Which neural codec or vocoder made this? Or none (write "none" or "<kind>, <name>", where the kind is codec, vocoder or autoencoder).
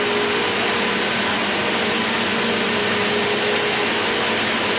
none